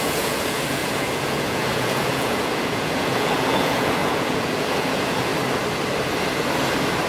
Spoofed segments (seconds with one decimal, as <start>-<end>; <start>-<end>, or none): 0.0-5.3